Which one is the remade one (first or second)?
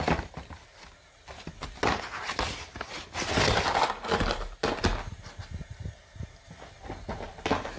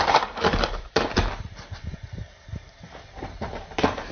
second